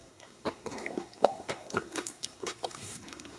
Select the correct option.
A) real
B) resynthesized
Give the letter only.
B